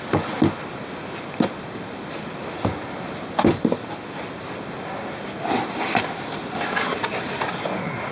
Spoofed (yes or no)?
no